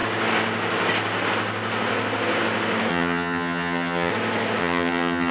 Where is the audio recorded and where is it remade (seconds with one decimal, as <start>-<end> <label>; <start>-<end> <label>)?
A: 0.0-2.9 recorded; 2.9-4.1 remade; 4.1-4.6 recorded; 4.6-5.3 remade